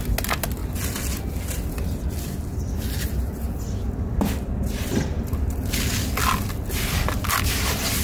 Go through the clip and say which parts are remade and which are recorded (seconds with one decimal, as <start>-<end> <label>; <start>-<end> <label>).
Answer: 0.0-8.0 recorded